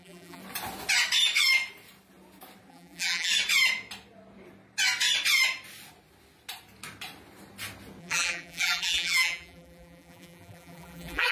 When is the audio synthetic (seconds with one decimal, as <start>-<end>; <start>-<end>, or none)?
0.0-0.4; 2.7-3.3; 8.0-11.3